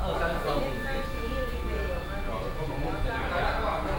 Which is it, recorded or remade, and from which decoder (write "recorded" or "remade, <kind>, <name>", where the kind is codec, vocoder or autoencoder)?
recorded